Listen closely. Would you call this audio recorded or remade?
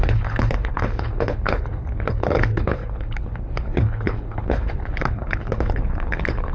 remade